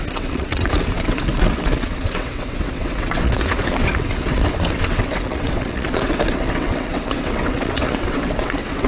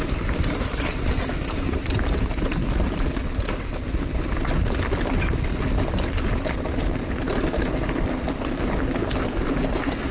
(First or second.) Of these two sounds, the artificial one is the first